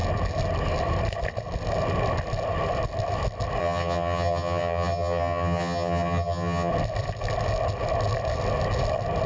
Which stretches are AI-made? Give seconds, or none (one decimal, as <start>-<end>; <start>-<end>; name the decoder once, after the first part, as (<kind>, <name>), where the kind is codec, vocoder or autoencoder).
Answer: 3.6-6.7 (vocoder, HiFi-GAN)